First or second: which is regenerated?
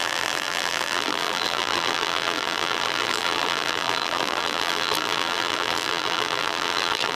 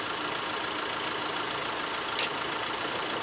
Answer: first